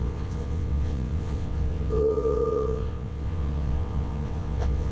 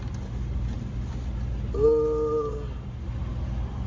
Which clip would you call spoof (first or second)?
first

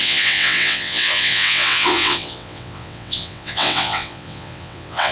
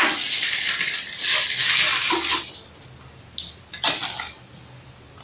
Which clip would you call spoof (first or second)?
first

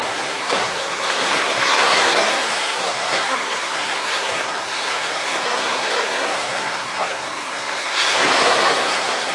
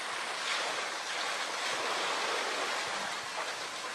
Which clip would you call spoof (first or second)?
first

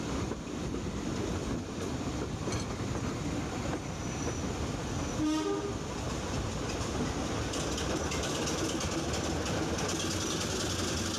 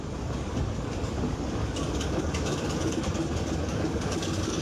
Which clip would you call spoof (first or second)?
second